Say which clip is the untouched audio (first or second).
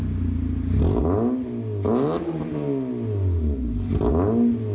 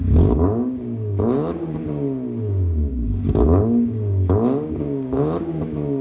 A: first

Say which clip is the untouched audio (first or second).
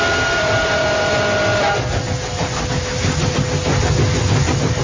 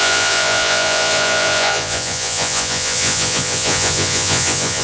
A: first